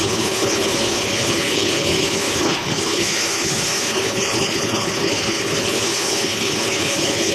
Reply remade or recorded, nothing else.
remade